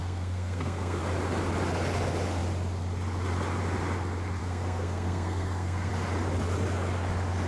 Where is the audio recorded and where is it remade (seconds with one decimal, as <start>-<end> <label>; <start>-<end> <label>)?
0.0-1.0 remade; 1.0-4.4 recorded; 4.4-5.9 remade; 5.9-7.5 recorded

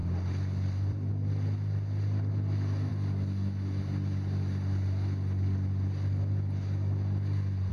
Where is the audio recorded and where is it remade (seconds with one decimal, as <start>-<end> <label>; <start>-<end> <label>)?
0.0-1.1 remade; 1.1-7.7 recorded

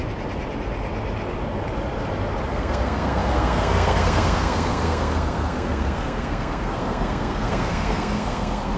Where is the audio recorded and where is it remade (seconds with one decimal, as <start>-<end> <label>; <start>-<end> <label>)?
0.0-2.5 recorded; 2.5-8.8 remade

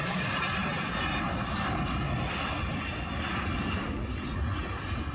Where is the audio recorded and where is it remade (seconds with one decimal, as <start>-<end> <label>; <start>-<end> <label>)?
0.0-5.1 recorded

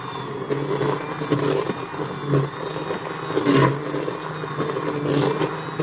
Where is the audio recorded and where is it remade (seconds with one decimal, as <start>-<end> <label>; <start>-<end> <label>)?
0.0-5.8 recorded

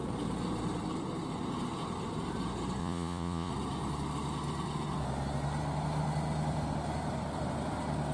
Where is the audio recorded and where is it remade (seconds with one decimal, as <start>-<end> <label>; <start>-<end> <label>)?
0.0-2.8 recorded; 2.8-3.5 remade; 3.5-8.1 recorded

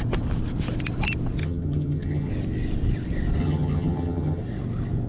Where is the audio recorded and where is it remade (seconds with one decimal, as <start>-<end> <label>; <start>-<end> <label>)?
0.0-1.4 recorded; 1.4-2.3 remade; 2.3-3.4 recorded; 3.4-4.4 remade; 4.4-5.1 recorded